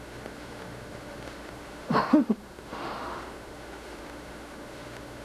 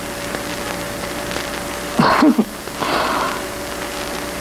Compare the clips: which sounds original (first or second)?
second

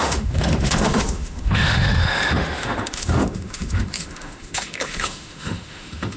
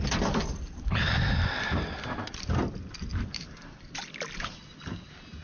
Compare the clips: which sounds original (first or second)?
second